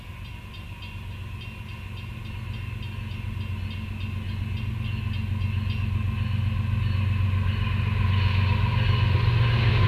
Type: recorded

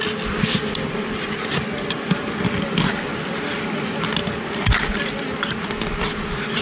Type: recorded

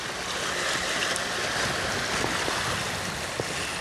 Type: recorded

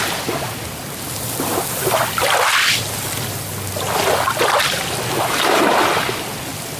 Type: recorded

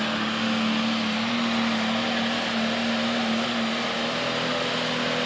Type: recorded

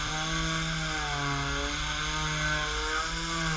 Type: recorded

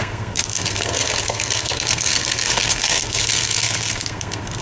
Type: remade